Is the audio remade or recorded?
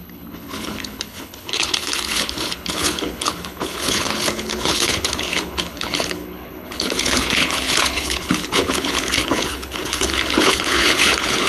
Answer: remade